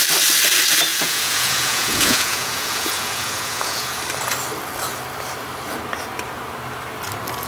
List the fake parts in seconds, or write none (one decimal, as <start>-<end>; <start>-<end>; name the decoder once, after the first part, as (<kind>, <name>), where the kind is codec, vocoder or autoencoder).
0.9-4.0 (vocoder, Vocos)